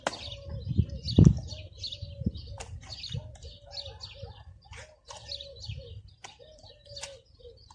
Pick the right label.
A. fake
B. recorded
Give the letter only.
B